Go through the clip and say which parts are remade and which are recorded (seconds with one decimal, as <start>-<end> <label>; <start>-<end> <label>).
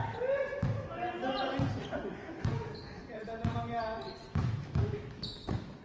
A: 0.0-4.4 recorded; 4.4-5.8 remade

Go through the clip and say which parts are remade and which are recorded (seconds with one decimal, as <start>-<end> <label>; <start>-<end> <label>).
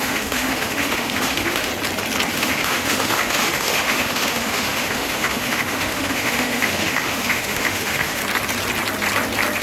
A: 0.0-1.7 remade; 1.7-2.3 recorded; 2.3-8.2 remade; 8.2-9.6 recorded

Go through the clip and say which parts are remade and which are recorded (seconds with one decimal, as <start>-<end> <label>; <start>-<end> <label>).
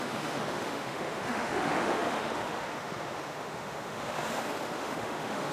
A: 0.0-5.5 remade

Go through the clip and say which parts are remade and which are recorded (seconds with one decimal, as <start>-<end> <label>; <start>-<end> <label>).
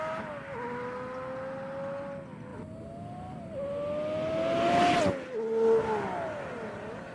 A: 0.0-7.1 recorded